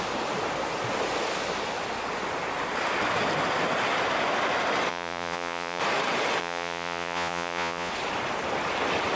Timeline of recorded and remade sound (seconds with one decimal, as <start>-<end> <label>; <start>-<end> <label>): 0.0-4.9 recorded; 4.9-5.8 remade; 5.8-6.4 recorded; 6.4-7.9 remade; 7.9-9.2 recorded